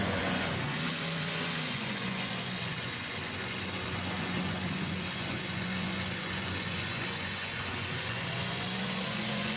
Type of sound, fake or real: fake